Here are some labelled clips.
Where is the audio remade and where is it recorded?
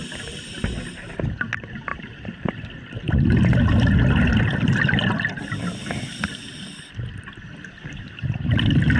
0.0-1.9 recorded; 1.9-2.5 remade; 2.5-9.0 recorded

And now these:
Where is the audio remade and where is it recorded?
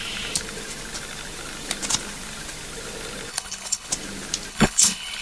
0.0-3.3 recorded; 3.3-3.9 remade; 3.9-4.5 recorded; 4.5-5.2 remade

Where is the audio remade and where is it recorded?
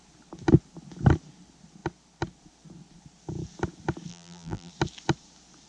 0.0-4.1 recorded; 4.1-4.7 remade; 4.7-5.7 recorded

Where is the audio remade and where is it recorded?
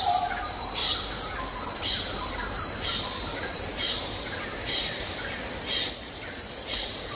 0.0-0.8 remade; 0.8-2.1 recorded; 2.1-3.7 remade; 3.7-6.3 recorded; 6.3-7.2 remade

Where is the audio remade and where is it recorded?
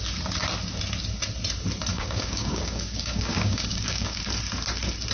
0.0-1.9 recorded; 1.9-4.2 remade; 4.2-5.1 recorded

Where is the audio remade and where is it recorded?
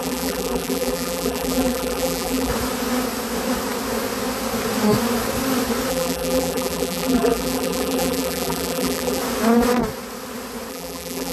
0.0-2.5 remade; 2.5-5.9 recorded; 5.9-9.2 remade; 9.2-10.7 recorded; 10.7-11.3 remade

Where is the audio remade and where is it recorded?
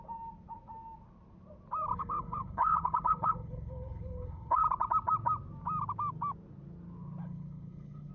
0.0-1.9 recorded; 1.9-4.6 remade; 4.6-7.2 recorded; 7.2-8.1 remade